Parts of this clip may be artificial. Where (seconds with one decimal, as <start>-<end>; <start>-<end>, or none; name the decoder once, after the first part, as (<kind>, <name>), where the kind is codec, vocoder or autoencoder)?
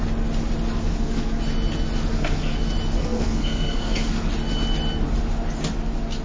0.8-1.4 (codec, SNAC); 2.1-2.6; 3.0-4.3